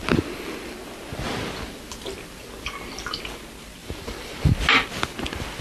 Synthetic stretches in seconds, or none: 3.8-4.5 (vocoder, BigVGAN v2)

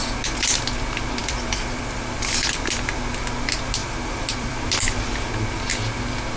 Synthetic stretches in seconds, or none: 1.2-3.0 (vocoder, BigVGAN v2); 3.8-5.1

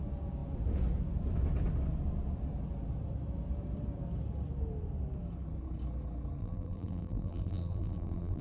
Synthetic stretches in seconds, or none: 6.4-8.4 (vocoder, BigVGAN v2)

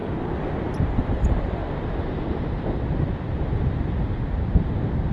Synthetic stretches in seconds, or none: 0.8-1.6 (vocoder, BigVGAN v2)

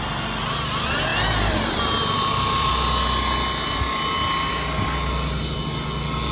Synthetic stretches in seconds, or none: 1.1-2.7 (vocoder, BigVGAN v2)